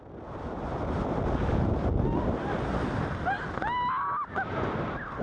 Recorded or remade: recorded